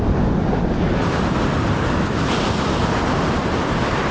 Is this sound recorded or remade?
recorded